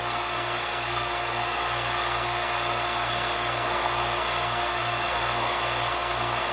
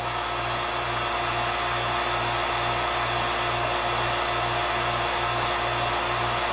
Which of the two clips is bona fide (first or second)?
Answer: second